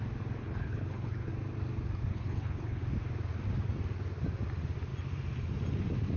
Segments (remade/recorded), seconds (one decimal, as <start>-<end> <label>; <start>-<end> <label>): 0.0-0.4 recorded; 0.4-1.3 remade; 1.3-2.1 recorded; 2.1-2.8 remade; 2.8-6.2 recorded